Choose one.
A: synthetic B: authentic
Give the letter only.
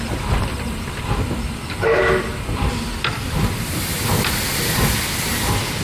B